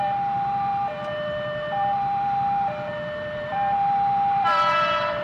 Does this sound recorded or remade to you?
remade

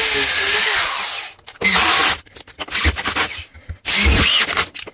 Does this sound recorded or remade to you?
recorded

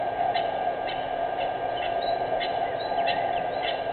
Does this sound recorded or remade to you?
remade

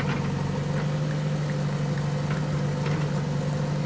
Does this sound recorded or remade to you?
recorded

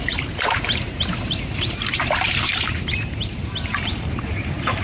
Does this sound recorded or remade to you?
remade